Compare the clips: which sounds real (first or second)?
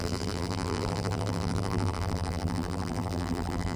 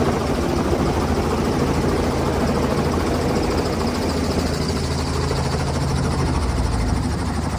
second